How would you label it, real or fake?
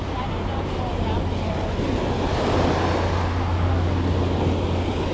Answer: real